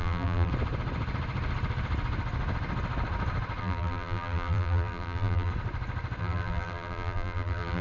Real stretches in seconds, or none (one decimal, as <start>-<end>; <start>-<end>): 0.5-3.6; 5.5-6.2